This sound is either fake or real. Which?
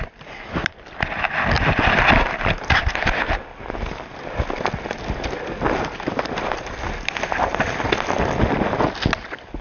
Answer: real